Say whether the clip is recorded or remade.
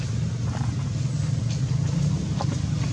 recorded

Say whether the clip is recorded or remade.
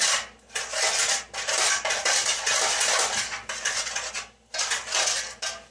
recorded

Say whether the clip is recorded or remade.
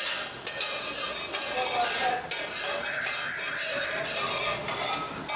recorded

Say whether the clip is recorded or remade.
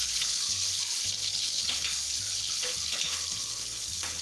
remade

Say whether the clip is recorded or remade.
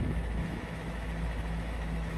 remade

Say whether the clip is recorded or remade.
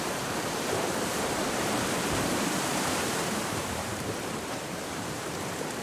remade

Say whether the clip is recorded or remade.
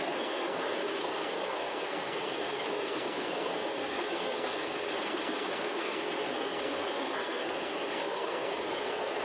remade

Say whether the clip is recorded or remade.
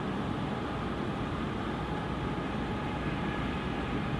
recorded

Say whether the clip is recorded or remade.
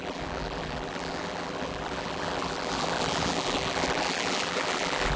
remade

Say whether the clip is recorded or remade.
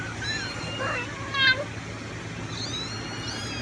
recorded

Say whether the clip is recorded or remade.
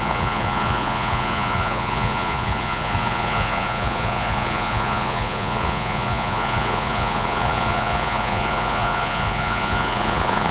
remade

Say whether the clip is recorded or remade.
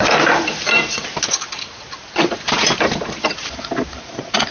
remade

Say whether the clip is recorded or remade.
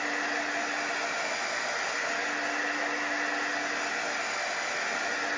recorded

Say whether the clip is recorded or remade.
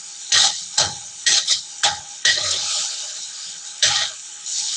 remade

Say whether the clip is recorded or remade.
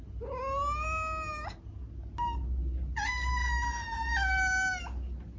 recorded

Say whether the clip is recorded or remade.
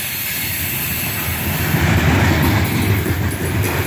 recorded